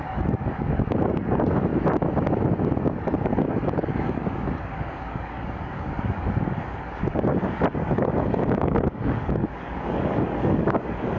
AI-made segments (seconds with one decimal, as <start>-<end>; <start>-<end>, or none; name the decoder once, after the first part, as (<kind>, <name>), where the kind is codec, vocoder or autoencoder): 0.0-1.7 (codec, DAC); 2.8-11.2